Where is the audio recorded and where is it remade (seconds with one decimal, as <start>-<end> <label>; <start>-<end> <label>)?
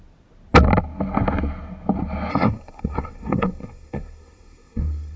0.0-2.3 recorded; 2.3-5.2 remade